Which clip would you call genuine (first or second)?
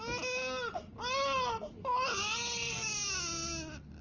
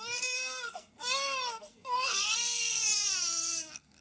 first